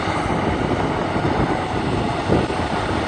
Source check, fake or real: real